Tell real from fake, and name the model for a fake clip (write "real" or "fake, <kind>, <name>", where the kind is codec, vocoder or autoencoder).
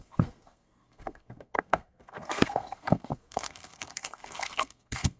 fake, codec, SNAC